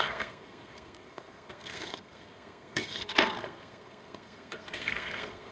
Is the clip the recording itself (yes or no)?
no